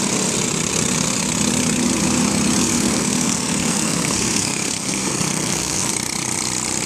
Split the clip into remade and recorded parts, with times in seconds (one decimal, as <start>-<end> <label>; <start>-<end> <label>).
0.0-2.6 recorded; 2.6-5.9 remade; 5.9-6.9 recorded